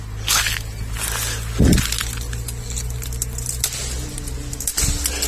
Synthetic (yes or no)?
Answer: no